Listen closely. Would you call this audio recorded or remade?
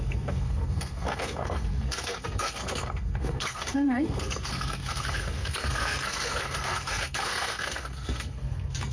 remade